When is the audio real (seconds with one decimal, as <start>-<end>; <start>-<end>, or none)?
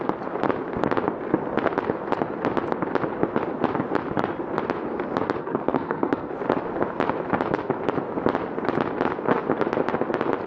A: 0.0-5.4; 6.3-10.5